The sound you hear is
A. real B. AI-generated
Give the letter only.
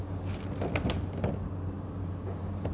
A